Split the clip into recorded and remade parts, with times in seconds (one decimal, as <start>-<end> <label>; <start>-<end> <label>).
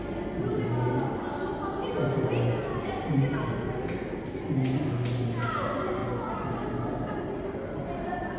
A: 0.0-8.4 recorded